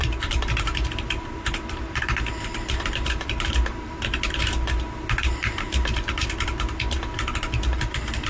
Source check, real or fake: fake